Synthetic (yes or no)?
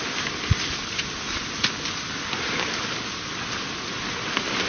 no